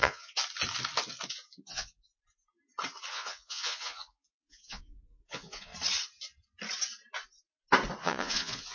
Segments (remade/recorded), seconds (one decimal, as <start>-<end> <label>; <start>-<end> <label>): 0.0-0.4 remade; 0.4-1.3 recorded; 1.3-2.1 remade; 2.1-3.1 recorded; 3.1-5.7 remade; 5.7-8.0 recorded; 8.0-8.7 remade